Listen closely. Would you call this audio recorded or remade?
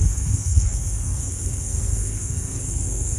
remade